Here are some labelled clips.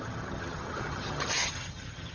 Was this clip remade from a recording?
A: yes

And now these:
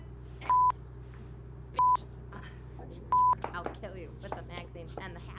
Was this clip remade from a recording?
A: no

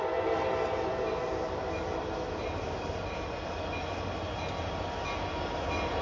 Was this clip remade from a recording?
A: no